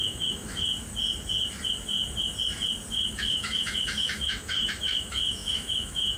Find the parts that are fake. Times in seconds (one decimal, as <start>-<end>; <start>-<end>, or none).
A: 0.0-0.7; 2.9-6.2